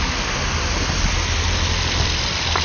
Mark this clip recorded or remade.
recorded